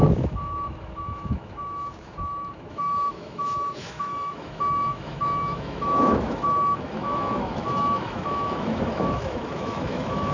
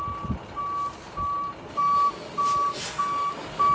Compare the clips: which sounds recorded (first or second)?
second